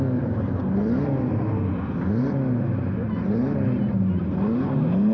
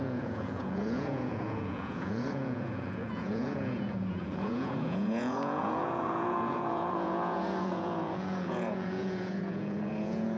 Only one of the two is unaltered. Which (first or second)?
first